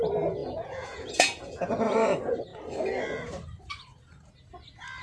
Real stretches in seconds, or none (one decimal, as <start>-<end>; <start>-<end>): 0.0-0.4; 1.7-5.0